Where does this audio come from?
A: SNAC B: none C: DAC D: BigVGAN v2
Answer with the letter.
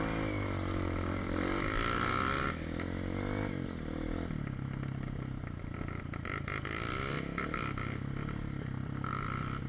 B